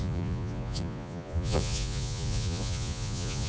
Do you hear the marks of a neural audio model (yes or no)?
yes